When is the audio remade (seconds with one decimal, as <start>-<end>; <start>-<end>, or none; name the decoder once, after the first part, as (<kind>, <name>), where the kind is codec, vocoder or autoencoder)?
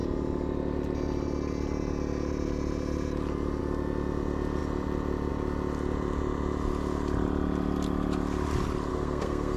8.9-9.6 (codec, SNAC)